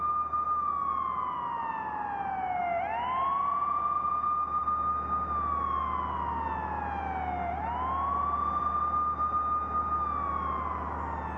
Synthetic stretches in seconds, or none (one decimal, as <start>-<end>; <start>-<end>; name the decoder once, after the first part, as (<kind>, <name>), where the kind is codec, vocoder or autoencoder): none